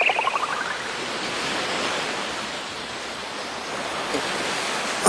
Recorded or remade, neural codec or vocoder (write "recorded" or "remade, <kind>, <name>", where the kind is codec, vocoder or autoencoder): recorded